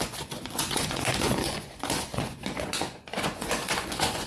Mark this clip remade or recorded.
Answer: remade